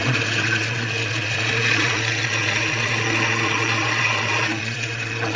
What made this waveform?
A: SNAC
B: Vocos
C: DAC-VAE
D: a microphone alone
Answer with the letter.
B